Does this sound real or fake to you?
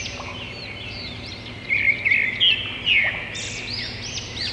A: real